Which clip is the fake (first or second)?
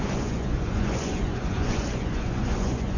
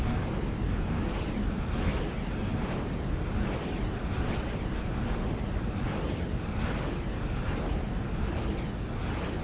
first